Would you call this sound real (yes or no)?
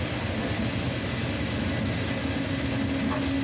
yes